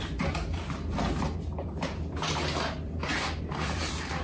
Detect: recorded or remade remade